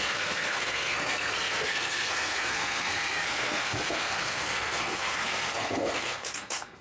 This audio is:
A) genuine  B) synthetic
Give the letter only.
B